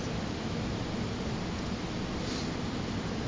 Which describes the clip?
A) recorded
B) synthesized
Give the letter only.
A